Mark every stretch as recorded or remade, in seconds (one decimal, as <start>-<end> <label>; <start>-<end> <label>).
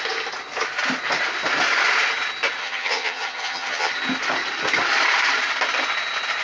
0.0-2.6 recorded; 2.6-3.9 remade; 3.9-6.4 recorded